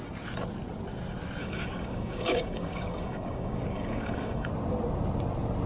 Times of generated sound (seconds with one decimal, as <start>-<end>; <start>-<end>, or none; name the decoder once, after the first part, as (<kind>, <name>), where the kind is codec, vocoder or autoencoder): 1.4-4.5 (codec, DAC)